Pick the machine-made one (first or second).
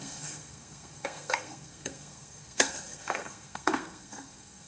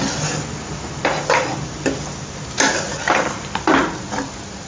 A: first